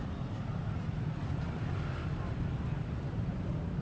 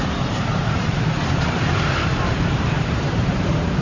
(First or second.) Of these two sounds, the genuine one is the first